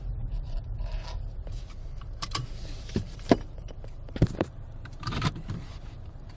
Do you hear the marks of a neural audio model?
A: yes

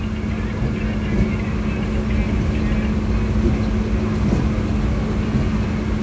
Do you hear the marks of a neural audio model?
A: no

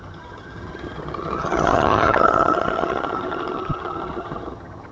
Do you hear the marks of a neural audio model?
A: yes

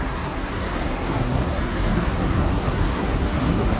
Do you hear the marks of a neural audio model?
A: yes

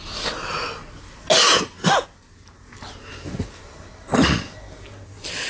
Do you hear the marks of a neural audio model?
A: no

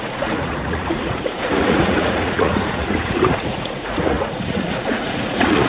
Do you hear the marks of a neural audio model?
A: yes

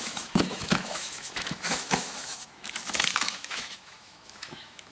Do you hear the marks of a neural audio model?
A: yes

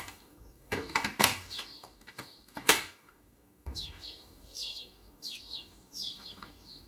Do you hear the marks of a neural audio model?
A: yes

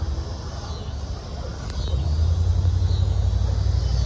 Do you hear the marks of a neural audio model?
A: no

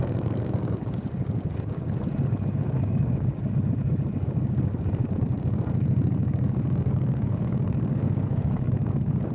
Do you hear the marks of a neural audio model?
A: yes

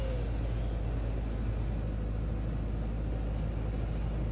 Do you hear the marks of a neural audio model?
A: no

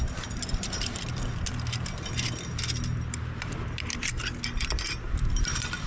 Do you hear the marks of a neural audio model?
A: no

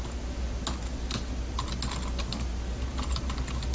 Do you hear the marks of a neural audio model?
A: no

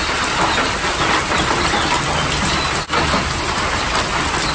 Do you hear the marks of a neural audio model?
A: no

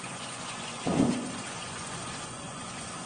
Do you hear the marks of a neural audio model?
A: yes